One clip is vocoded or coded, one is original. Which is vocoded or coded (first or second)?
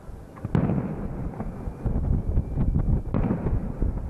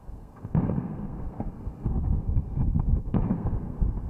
second